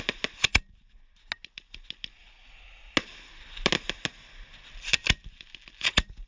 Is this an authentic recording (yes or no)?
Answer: yes